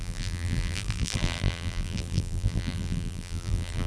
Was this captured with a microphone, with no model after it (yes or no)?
no